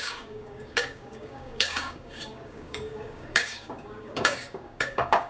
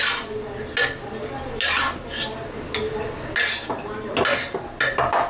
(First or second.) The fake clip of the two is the first